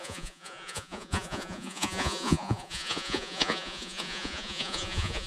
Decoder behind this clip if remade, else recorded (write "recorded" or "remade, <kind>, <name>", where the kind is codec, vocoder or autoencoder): remade, vocoder, Vocos